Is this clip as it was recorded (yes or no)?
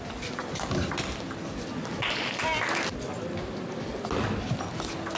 yes